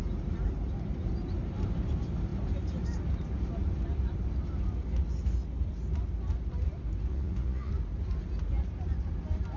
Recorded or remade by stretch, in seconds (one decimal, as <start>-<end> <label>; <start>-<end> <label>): 0.0-7.1 recorded; 7.1-7.7 remade; 7.7-9.6 recorded